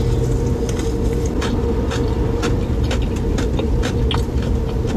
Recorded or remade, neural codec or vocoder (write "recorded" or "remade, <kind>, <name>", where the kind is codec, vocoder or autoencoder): recorded